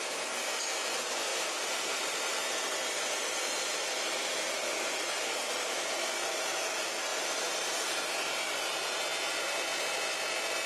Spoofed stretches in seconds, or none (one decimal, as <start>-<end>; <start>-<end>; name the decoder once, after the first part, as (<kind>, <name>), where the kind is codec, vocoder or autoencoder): 1.3-6.3 (vocoder, BigVGAN v2)